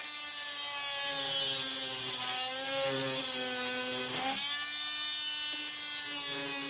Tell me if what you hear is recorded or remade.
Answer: recorded